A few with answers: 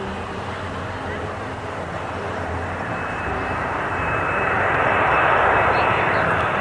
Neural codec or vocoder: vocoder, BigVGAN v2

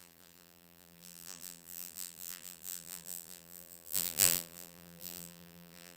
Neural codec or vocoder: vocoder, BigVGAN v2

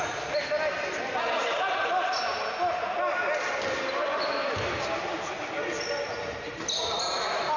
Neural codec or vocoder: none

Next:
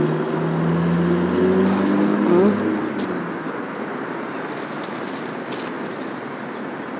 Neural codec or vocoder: none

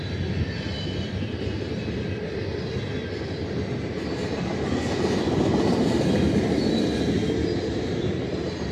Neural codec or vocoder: none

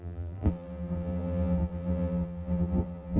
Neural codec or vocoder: vocoder, BigVGAN v2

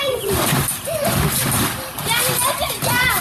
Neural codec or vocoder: vocoder, BigVGAN v2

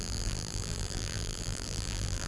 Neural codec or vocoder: vocoder, BigVGAN v2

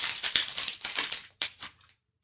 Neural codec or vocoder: vocoder, BigVGAN v2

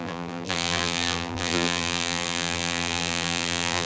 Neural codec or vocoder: vocoder, BigVGAN v2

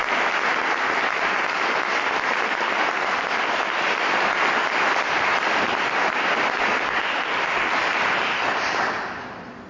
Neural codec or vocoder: vocoder, BigVGAN v2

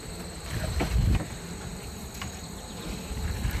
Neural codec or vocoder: vocoder, BigVGAN v2